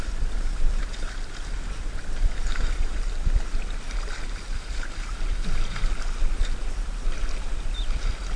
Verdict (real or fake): fake